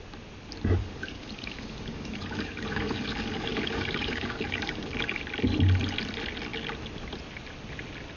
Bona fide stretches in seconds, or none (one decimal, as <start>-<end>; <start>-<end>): 0.0-0.8; 5.2-8.2